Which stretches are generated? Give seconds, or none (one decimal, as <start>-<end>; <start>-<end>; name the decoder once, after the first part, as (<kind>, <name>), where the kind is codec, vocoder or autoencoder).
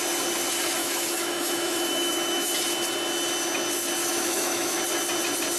0.8-2.5 (autoencoder, DAC-VAE); 4.0-4.8